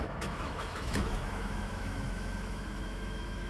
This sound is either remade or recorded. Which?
remade